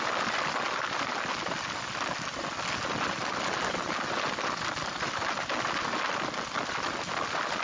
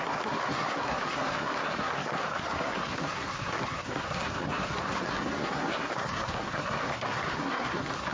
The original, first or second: first